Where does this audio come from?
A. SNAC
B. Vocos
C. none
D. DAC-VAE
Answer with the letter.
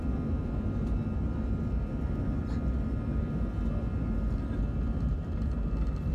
C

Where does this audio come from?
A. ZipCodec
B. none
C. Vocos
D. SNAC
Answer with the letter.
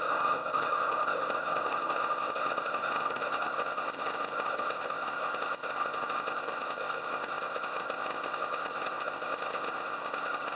A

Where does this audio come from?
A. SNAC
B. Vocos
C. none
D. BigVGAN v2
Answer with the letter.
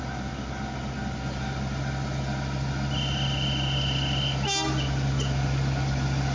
C